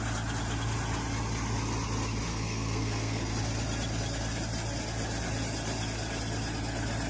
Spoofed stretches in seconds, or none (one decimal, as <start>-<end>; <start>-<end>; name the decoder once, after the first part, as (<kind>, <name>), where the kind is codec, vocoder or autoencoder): 2.3-3.3 (codec, SNAC)